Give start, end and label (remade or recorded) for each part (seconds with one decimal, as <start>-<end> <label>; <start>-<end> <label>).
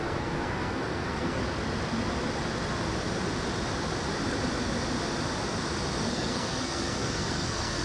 0.0-1.4 remade; 1.4-6.1 recorded; 6.1-7.8 remade